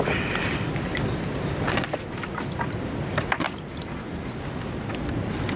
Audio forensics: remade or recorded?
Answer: recorded